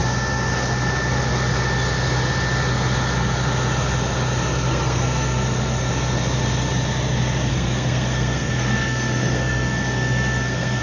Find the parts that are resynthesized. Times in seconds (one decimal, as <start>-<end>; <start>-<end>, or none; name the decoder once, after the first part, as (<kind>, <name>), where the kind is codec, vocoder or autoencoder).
4.7-5.9 (codec, SNAC); 7.5-10.8